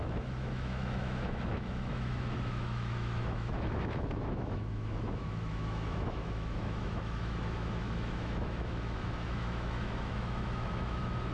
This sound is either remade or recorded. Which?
remade